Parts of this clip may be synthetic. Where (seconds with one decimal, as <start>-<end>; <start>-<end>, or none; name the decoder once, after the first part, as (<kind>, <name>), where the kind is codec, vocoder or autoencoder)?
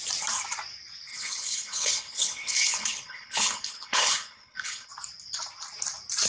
1.1-4.9 (codec, HILCodec)